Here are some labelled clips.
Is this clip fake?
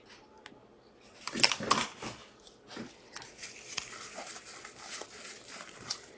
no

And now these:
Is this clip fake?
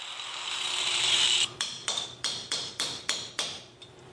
yes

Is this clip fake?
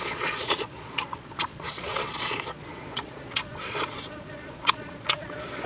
yes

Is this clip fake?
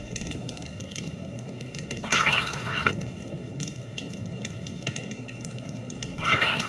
yes